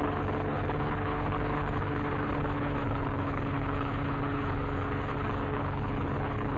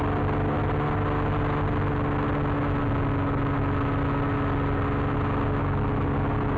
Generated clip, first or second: first